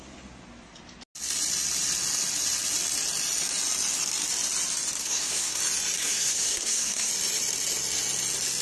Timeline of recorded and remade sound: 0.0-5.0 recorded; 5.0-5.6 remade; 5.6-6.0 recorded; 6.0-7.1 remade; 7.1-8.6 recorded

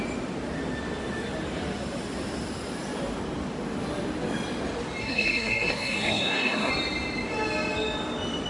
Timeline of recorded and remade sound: 0.0-5.0 recorded; 5.0-6.7 remade; 6.7-8.5 recorded

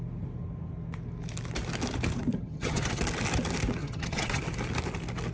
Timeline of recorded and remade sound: 0.0-2.4 recorded; 2.4-3.0 remade; 3.0-3.8 recorded; 3.8-4.4 remade; 4.4-5.3 recorded